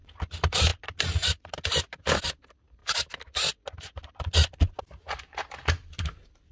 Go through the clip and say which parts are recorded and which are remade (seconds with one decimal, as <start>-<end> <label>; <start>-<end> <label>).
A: 0.0-0.7 remade; 0.7-2.2 recorded; 2.2-2.8 remade; 2.8-4.8 recorded; 4.8-6.5 remade